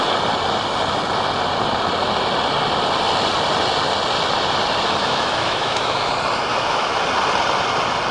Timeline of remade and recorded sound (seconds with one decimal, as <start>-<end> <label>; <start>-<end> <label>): 0.0-5.0 recorded; 5.0-6.1 remade; 6.1-6.5 recorded; 6.5-7.0 remade; 7.0-8.1 recorded